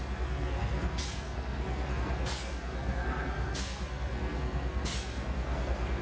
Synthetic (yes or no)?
yes